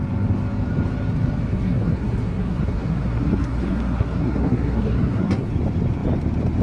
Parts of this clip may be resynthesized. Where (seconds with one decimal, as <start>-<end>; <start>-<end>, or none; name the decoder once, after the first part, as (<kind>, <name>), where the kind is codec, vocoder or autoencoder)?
1.5-5.5 (codec, SNAC)